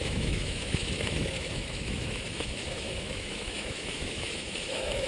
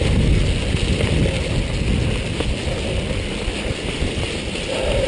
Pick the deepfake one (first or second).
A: first